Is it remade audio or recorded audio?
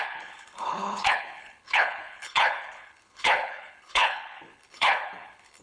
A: remade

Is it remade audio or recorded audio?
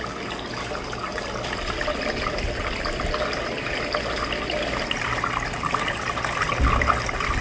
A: recorded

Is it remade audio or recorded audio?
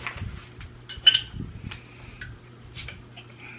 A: recorded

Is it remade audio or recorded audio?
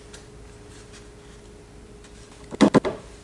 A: recorded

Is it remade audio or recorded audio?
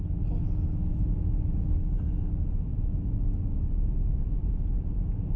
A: recorded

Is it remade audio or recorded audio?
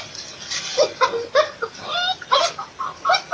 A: recorded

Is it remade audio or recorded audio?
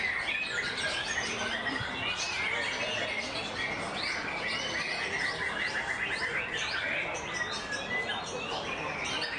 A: recorded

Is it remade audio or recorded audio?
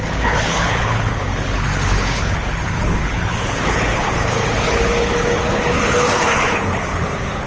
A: remade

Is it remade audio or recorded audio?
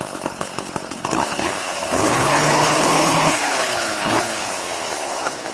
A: remade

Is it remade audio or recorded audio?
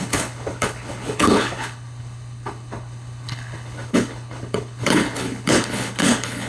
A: remade